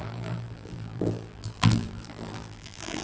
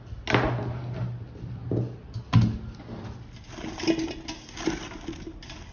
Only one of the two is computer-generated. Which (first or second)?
first